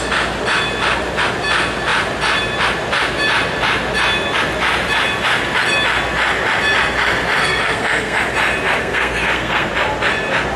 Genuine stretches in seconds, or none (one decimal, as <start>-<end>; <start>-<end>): 0.0-7.4; 8.2-8.8; 9.7-10.6

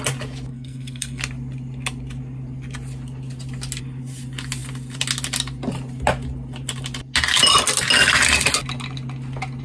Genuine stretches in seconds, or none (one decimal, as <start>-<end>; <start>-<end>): 0.0-0.5; 1.2-9.6

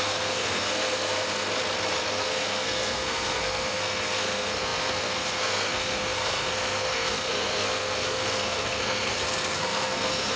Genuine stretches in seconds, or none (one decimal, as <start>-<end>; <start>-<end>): 1.5-2.1

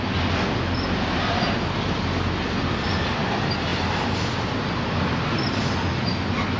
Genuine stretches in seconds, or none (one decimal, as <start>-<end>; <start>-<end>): 0.0-6.6

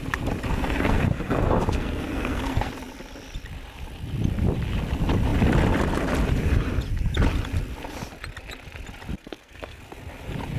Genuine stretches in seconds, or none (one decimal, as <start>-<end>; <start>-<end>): 0.0-0.5; 2.7-9.2; 9.8-10.6